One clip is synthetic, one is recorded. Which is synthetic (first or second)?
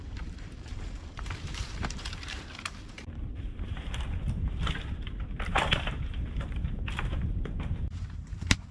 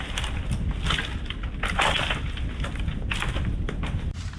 first